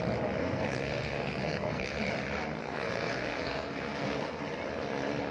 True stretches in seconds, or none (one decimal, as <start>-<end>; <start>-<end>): 0.0-0.4; 2.0-2.6; 4.4-5.3